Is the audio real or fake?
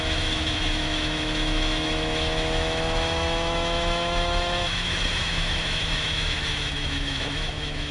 fake